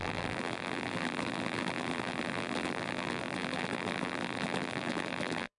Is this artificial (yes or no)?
yes